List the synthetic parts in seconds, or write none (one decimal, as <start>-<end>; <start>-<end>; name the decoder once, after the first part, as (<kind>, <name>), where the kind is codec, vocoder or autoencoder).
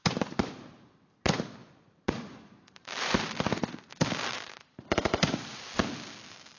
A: 0.0-0.9 (vocoder, BigVGAN v2); 1.6-5.6